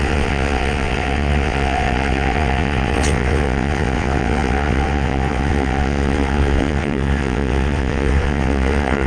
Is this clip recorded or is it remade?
remade